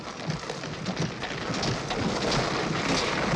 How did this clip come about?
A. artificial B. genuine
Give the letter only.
B